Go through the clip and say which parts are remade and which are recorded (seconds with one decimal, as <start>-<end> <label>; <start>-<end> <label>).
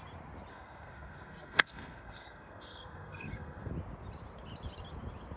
0.0-0.5 recorded; 0.5-3.7 remade; 3.7-5.4 recorded